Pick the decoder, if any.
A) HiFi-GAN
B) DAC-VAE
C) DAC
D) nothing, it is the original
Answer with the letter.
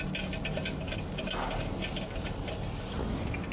D